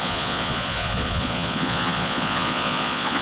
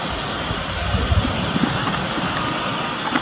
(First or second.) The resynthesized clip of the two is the first